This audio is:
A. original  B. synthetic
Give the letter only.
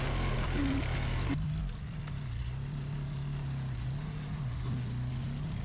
A